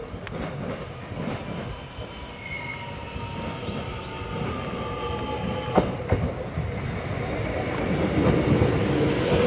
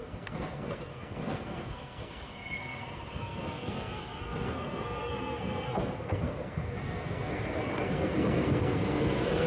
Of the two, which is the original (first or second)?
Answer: first